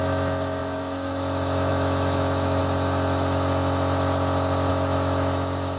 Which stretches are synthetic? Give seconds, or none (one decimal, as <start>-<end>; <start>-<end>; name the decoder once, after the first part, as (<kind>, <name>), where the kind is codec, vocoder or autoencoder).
0.0-2.6 (autoencoder, DAC-VAE); 4.7-5.8